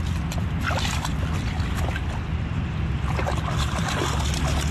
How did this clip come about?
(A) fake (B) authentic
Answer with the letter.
B